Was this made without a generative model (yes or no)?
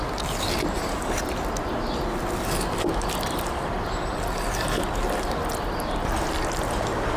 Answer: yes